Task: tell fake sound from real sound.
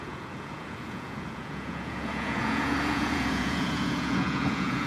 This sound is fake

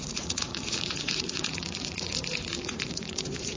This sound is fake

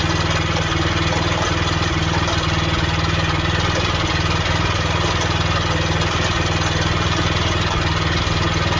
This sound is real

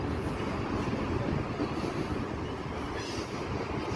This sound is real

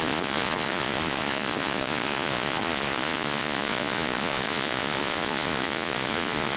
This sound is fake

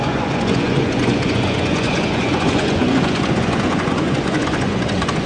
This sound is fake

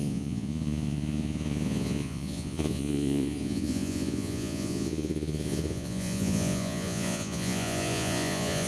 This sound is fake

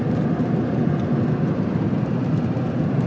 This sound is real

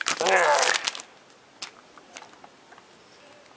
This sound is real